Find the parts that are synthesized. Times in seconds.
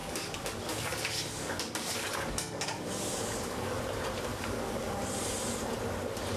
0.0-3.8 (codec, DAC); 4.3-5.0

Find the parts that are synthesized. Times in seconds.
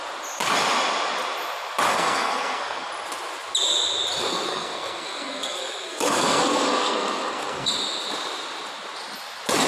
1.9-2.9 (codec, SNAC); 4.2-7.7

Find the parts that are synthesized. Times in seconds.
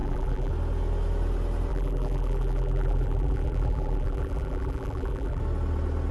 0.0-0.5 (vocoder, BigVGAN v2); 1.7-5.4